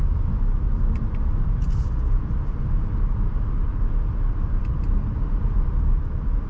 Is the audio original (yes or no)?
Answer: no